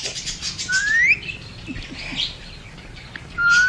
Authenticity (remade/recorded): recorded